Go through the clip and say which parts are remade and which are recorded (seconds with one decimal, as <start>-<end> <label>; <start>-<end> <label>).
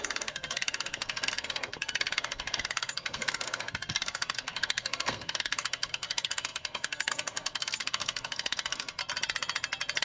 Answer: 0.0-9.0 remade; 9.0-10.0 recorded